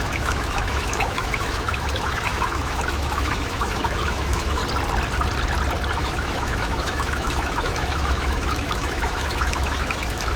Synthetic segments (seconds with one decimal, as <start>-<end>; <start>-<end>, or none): 0.0-4.6; 6.0-10.4